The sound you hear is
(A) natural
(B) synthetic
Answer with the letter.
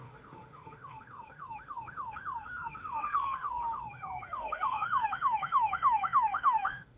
B